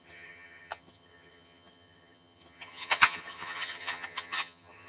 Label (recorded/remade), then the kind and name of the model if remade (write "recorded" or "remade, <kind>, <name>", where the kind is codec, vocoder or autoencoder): remade, vocoder, HiFi-GAN